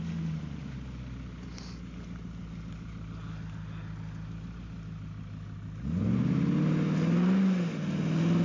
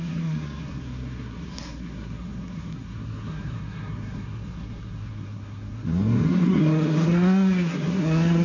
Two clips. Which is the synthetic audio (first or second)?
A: second